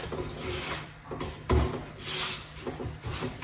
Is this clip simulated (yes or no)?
yes